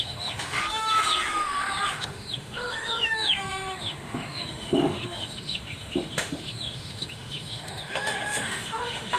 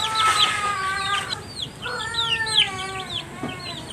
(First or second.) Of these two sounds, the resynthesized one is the first